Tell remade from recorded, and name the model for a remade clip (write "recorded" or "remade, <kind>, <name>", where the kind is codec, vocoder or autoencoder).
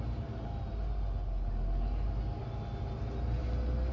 recorded